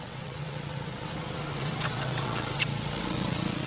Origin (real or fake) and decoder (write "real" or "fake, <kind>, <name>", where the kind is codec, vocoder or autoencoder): fake, vocoder, WaveNeXt